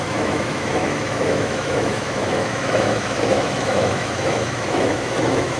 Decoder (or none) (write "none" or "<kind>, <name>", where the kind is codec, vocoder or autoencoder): autoencoder, DAC-VAE